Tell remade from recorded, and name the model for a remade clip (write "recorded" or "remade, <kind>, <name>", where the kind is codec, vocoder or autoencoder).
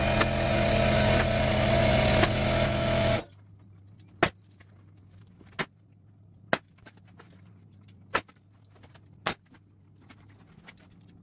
recorded